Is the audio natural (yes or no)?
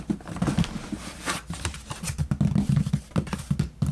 yes